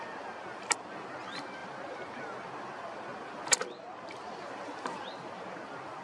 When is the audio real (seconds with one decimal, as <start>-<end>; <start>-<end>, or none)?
0.0-6.0